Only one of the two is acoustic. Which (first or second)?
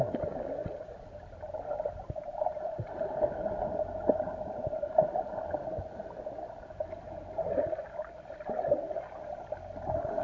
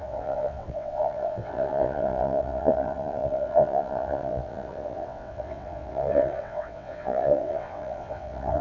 first